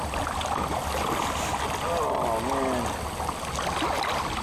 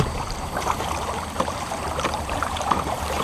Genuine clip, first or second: first